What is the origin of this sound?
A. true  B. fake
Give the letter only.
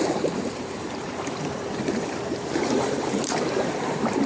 B